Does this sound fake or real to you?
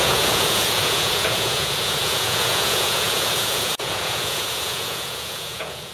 fake